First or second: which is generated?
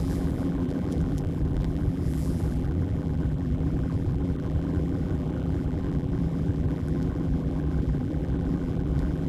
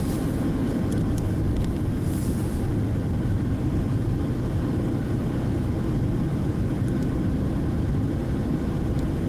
first